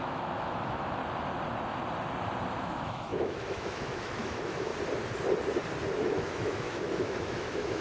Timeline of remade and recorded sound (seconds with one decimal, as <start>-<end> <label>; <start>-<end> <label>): 0.0-1.0 remade; 1.0-2.6 recorded; 2.6-4.7 remade; 4.7-5.9 recorded; 5.9-7.8 remade